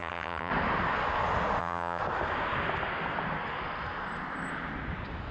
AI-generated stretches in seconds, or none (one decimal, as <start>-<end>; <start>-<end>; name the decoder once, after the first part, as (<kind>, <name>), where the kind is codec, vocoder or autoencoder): 0.0-0.5 (vocoder, HiFi-GAN); 1.6-2.0